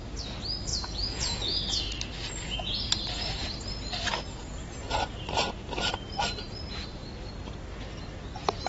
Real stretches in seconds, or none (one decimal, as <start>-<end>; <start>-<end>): 0.0-0.7; 1.8-8.7